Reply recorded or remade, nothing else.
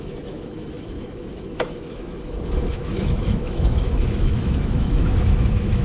remade